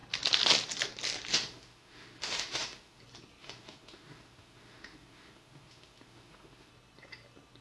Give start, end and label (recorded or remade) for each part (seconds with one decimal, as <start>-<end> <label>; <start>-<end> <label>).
0.0-1.3 recorded; 1.3-3.0 remade; 3.0-3.4 recorded; 3.4-6.7 remade; 6.7-7.6 recorded